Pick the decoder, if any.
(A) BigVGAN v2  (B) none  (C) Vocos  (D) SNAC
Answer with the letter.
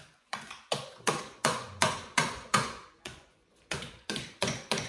C